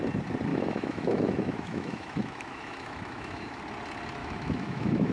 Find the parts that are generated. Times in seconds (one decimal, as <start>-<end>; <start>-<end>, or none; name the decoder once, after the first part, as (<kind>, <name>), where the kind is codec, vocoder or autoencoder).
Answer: 0.5-3.6 (autoencoder, DAC-VAE); 4.2-5.1